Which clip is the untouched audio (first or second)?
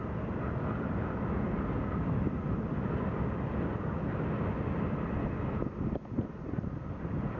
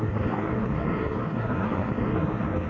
first